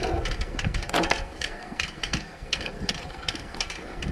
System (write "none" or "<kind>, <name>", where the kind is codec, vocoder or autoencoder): codec, SNAC